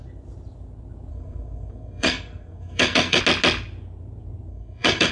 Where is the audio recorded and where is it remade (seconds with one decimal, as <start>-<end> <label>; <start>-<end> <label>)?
0.0-1.1 recorded; 1.1-3.2 remade; 3.2-4.5 recorded; 4.5-5.1 remade